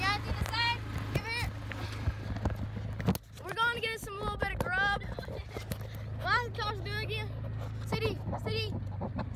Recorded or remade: recorded